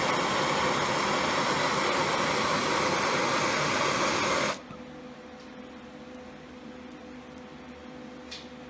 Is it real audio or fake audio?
real